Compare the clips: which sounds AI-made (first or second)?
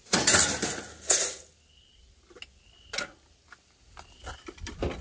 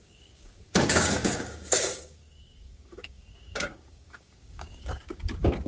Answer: second